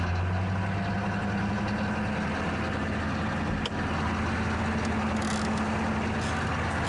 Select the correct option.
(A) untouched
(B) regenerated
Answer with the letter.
A